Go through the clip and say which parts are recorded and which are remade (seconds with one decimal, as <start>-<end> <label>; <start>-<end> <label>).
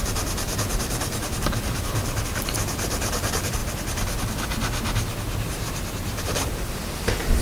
0.0-3.6 remade; 3.6-6.2 recorded; 6.2-7.4 remade